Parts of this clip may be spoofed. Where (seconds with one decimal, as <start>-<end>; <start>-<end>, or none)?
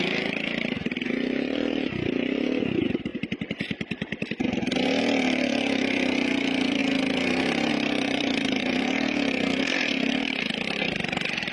0.0-3.1; 5.0-6.8; 7.7-8.6; 9.6-11.5